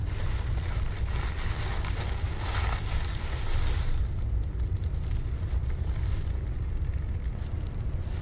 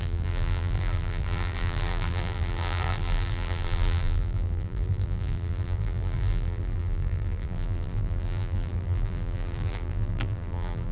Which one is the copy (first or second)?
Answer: second